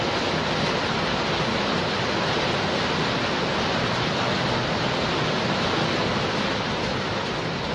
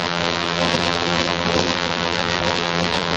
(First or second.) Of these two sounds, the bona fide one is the first